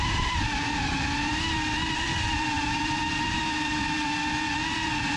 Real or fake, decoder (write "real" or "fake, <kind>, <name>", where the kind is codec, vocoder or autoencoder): fake, vocoder, BigVGAN v2